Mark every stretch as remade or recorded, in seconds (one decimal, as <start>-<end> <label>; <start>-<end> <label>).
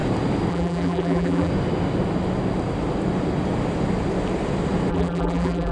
0.0-0.5 recorded; 0.5-1.5 remade; 1.5-4.9 recorded; 4.9-5.7 remade